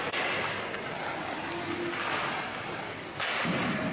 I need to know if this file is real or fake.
real